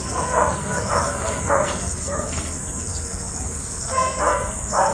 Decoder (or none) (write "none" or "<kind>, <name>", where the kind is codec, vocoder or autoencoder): codec, SNAC